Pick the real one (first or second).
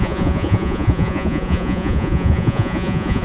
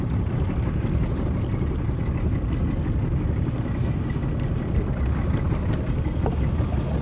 second